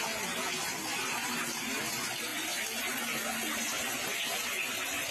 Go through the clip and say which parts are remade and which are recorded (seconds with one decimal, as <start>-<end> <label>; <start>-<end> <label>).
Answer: 0.0-1.2 recorded; 1.2-1.8 remade; 1.8-5.1 recorded